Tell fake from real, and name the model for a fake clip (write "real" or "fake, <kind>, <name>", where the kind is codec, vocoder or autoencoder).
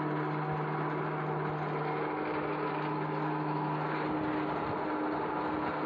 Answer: real